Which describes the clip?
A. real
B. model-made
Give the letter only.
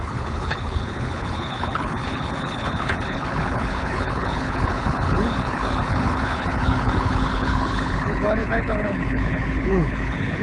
B